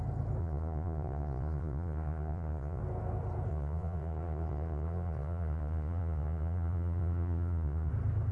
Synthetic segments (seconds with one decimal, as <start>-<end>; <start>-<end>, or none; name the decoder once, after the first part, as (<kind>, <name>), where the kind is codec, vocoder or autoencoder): 0.4-2.8 (vocoder, Vocos); 3.5-7.9